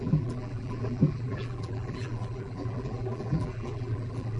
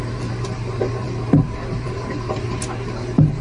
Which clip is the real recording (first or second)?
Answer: second